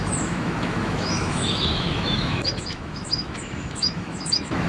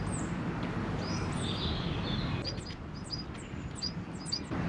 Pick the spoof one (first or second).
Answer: first